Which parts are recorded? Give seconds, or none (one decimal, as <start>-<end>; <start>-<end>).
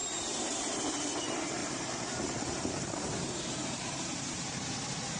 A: 0.0-1.6; 4.7-5.2